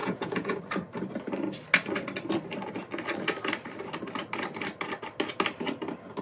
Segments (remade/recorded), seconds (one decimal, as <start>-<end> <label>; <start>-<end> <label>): 0.0-0.6 remade; 0.6-6.2 recorded